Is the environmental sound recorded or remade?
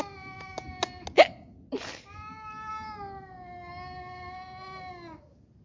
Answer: recorded